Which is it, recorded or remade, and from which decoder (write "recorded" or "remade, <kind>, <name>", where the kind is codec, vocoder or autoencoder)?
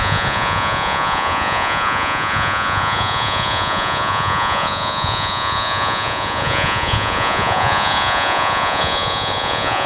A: remade, vocoder, Vocos